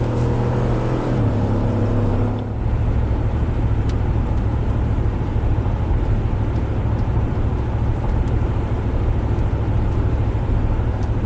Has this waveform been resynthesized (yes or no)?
yes